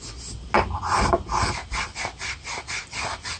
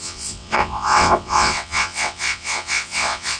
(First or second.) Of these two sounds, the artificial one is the second